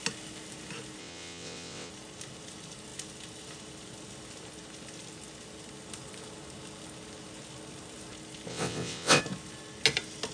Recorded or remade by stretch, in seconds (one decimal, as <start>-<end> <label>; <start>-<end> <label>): 0.0-1.0 recorded; 1.0-1.9 remade; 1.9-8.5 recorded; 8.5-9.2 remade; 9.2-10.3 recorded